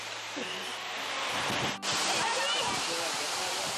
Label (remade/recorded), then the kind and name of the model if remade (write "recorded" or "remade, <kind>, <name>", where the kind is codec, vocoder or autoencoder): recorded